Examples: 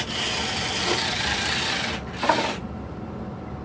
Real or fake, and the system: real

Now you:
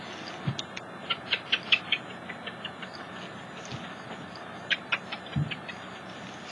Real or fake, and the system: real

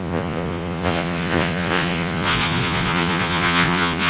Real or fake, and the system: fake, vocoder, Vocos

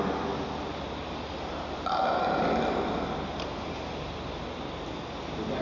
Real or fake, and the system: real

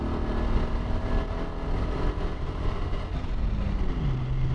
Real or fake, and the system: real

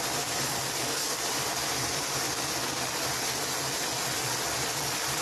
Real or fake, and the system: real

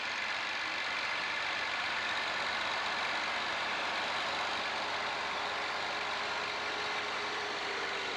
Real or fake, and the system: real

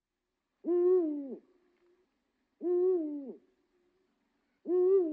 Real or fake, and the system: real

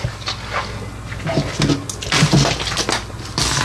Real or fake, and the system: real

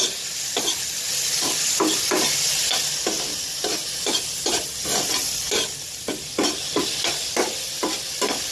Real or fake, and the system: real